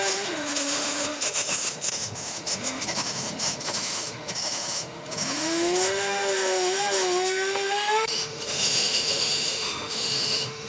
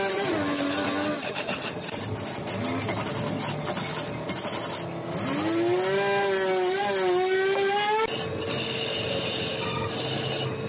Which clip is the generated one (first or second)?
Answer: first